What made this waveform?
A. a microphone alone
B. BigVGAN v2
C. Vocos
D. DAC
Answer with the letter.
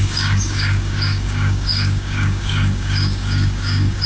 D